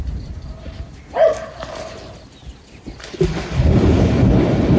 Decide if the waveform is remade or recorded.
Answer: recorded